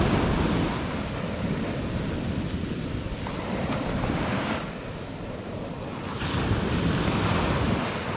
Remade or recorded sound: recorded